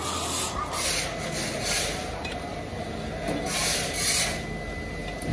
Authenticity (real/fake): real